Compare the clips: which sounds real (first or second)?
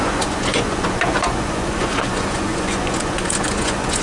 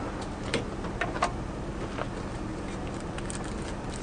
second